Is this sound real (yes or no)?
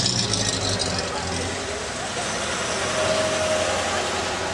yes